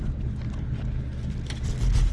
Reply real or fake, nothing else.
real